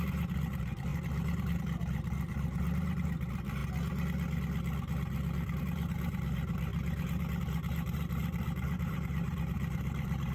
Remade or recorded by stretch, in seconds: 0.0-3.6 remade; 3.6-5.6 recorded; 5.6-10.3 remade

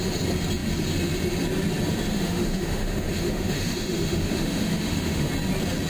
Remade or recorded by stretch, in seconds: 0.0-2.1 recorded; 2.1-5.3 remade; 5.3-5.9 recorded

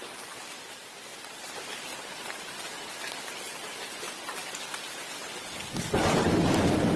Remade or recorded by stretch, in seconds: 0.0-1.1 recorded; 1.1-2.6 remade; 2.6-7.0 recorded

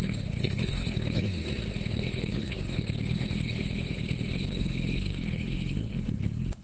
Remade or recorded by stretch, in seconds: 0.0-1.4 remade; 1.4-1.9 recorded; 1.9-6.6 remade

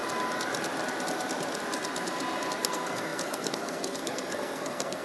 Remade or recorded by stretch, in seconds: 0.0-2.6 recorded; 2.6-5.0 remade